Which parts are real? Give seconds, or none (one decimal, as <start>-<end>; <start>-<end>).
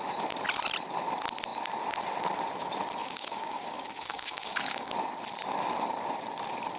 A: 0.0-3.0; 4.9-6.8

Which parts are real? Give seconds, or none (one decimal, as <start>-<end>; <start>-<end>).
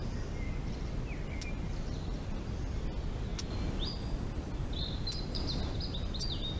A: 0.0-6.6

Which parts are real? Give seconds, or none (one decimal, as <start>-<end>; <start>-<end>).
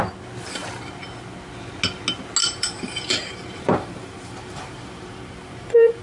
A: 0.0-2.4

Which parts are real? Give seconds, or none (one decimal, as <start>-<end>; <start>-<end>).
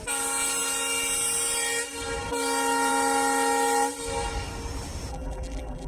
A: 0.0-5.1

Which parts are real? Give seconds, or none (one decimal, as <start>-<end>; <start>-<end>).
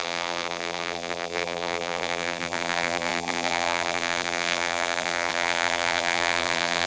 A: none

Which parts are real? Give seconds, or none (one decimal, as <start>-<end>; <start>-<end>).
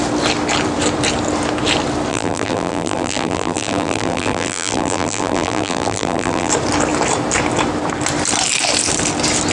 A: 0.0-2.1; 6.5-9.5